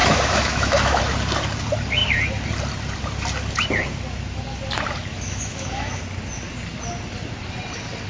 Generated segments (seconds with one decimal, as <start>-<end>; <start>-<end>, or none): 0.0-1.0; 5.1-6.0